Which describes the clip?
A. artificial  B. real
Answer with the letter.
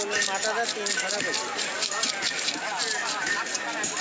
B